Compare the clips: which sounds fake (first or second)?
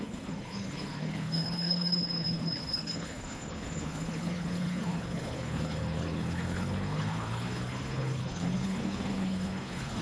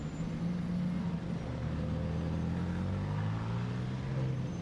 first